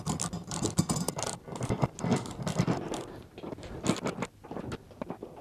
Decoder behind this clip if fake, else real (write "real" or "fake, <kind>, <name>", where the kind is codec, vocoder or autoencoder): real